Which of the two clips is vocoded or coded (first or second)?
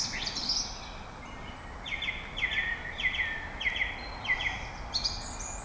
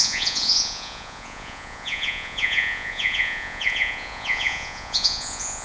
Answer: second